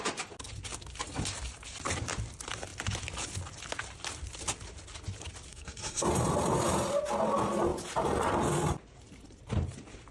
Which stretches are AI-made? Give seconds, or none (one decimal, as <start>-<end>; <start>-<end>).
5.5-6.1